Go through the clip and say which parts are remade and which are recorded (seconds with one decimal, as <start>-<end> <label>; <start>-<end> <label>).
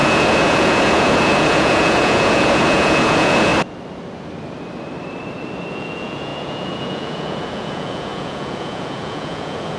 0.0-3.5 remade; 3.5-5.7 recorded; 5.7-9.8 remade